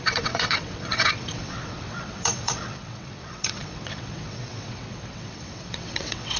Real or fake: fake